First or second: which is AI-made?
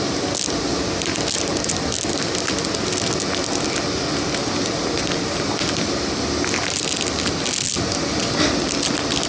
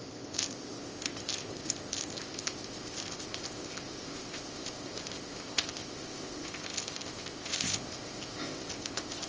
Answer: second